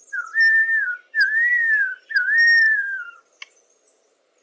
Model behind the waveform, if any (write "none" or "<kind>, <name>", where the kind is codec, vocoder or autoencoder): none